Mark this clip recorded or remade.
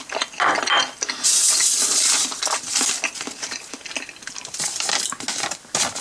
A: recorded